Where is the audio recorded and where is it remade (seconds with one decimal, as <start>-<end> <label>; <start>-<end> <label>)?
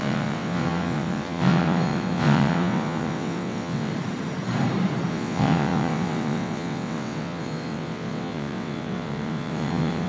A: 0.0-3.9 remade; 3.9-5.1 recorded; 5.1-10.1 remade